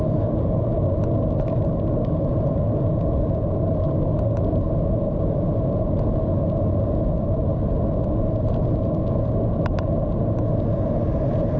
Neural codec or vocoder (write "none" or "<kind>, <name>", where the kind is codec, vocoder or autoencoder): none